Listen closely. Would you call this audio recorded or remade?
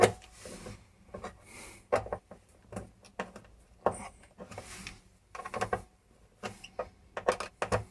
recorded